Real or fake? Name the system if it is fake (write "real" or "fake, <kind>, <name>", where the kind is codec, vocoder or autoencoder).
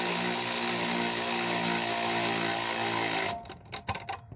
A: real